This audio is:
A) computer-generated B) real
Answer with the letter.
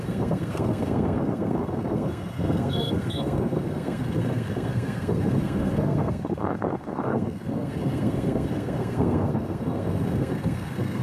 A